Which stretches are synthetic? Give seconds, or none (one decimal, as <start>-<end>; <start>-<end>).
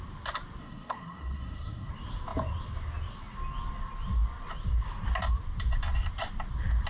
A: 0.6-1.9